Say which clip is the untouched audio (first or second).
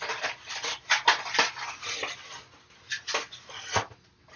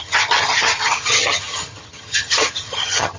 first